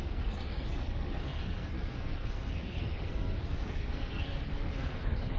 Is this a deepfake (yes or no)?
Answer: yes